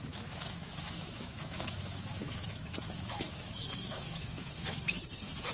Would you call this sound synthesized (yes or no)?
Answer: yes